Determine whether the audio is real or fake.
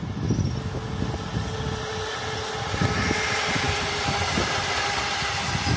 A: real